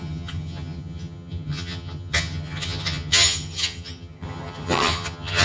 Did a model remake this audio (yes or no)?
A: yes